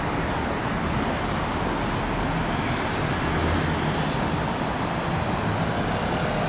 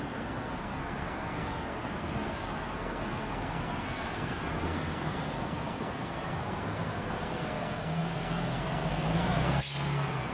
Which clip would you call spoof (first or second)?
second